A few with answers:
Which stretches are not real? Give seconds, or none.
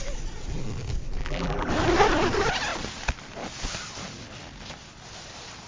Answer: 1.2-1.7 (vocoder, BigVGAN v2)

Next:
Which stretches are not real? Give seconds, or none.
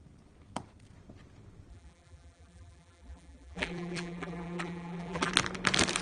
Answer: 1.7-5.3 (vocoder, BigVGAN v2)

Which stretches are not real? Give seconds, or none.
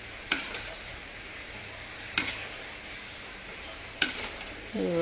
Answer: 0.0-5.0 (vocoder, BigVGAN v2)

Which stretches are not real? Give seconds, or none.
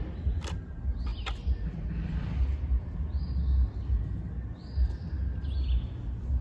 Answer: none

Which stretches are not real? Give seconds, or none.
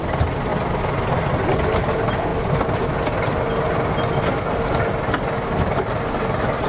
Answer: 2.3-2.8 (vocoder, BigVGAN v2)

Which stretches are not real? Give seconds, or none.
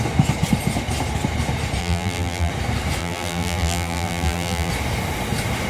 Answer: 1.8-2.5 (vocoder, BigVGAN v2); 3.0-4.7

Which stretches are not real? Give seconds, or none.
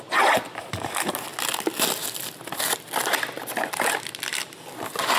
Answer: 0.0-1.3 (vocoder, BigVGAN v2); 2.4-3.0; 3.7-5.2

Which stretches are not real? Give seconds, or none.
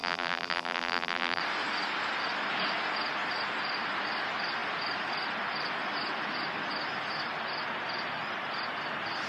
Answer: 0.0-1.4 (vocoder, BigVGAN v2)